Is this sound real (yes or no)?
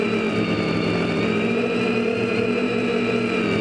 no